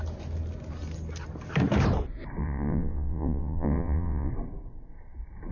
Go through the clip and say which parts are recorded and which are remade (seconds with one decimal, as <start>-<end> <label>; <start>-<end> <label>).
0.0-2.4 recorded; 2.4-4.3 remade; 4.3-5.5 recorded